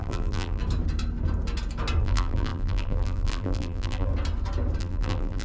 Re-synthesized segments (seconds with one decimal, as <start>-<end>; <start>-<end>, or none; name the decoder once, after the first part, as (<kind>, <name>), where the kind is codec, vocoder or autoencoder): 0.0-0.6 (vocoder, BigVGAN v2); 2.0-4.1; 4.8-5.4